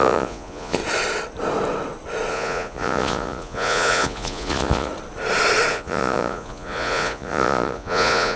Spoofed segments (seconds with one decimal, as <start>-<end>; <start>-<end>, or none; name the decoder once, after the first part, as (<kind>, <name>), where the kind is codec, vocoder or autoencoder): 0.0-0.8 (vocoder, Vocos); 2.3-4.9; 5.7-8.4